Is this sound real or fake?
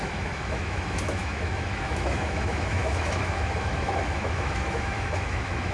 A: fake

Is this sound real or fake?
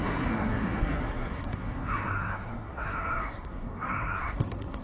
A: fake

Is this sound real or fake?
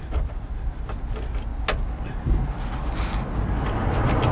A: real